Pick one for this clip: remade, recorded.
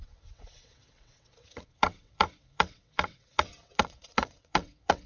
remade